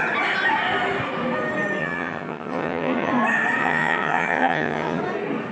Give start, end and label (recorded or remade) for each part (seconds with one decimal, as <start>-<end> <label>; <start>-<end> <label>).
0.0-1.8 recorded; 1.8-3.1 remade; 3.1-3.6 recorded; 3.6-5.0 remade; 5.0-5.5 recorded